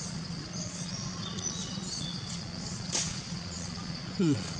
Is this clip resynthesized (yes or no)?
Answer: yes